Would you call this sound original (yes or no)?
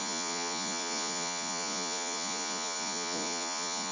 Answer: no